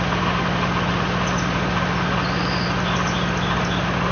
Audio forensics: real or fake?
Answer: real